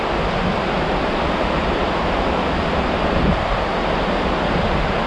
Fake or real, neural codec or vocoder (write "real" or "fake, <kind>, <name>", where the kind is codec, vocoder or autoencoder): real